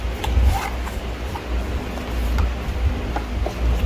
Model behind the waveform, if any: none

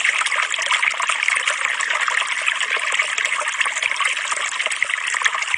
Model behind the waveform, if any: none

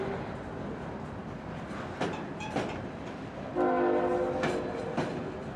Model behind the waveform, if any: none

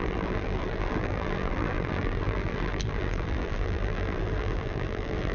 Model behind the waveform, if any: vocoder, BigVGAN v2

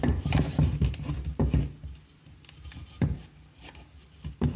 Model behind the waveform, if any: none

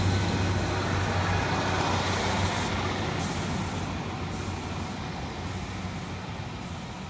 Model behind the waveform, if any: none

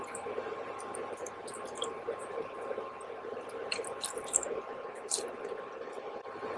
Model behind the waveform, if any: vocoder, BigVGAN v2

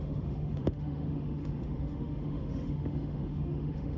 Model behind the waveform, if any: autoencoder, DAC-VAE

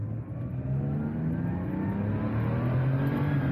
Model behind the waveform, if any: none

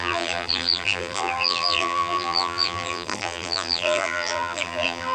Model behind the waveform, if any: vocoder, BigVGAN v2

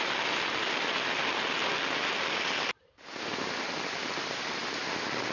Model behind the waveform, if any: none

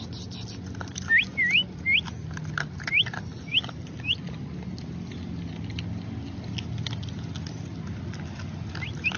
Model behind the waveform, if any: none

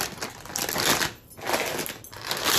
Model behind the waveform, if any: none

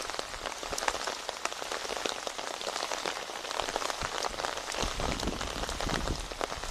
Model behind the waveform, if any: none